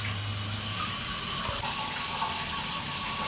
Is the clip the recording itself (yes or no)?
yes